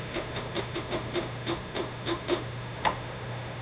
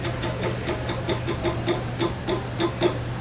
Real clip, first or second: second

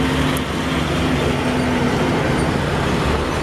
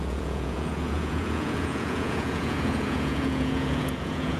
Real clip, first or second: first